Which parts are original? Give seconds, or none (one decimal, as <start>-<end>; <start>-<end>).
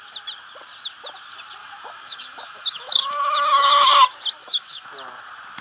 0.0-1.6; 3.9-4.4; 4.9-5.6